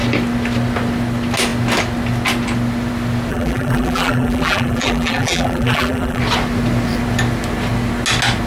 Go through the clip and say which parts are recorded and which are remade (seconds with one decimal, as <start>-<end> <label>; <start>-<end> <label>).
0.0-3.3 recorded; 3.3-6.2 remade; 6.2-8.5 recorded